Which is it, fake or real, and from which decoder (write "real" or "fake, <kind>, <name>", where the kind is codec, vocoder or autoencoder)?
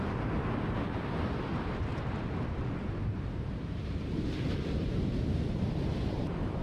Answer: fake, vocoder, BigVGAN v2